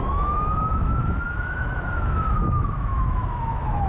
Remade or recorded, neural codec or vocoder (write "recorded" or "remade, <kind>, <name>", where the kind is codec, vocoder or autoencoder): remade, autoencoder, DAC-VAE